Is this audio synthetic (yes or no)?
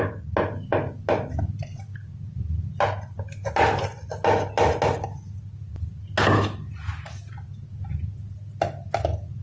no